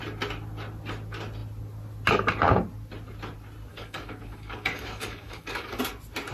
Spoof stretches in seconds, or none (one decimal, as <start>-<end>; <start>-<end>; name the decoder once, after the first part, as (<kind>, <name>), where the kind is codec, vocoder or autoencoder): 3.7-5.8 (codec, DAC)